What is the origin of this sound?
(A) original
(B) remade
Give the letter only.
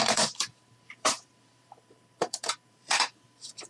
B